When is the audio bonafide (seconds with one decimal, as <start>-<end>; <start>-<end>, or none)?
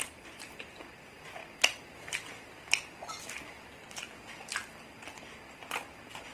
1.4-4.9